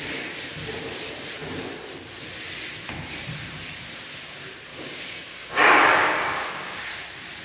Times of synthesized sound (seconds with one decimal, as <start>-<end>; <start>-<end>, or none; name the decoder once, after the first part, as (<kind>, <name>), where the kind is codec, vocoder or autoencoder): 4.7-6.8 (codec, DAC)